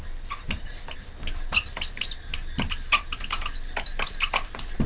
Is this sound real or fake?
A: real